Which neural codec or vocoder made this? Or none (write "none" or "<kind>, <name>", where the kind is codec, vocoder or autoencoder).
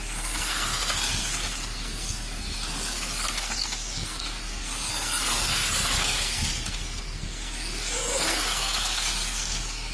codec, SNAC